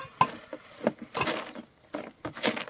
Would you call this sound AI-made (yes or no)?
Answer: no